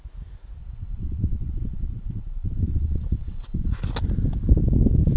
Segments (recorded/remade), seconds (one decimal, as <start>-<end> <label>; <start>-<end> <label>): 0.0-0.6 recorded; 0.6-3.7 remade; 3.7-5.2 recorded